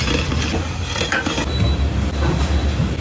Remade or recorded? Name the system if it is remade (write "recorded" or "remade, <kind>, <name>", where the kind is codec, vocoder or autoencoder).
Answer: recorded